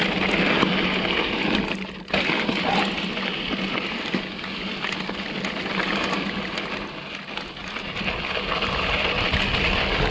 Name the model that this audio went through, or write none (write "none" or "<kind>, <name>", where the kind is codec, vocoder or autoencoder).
none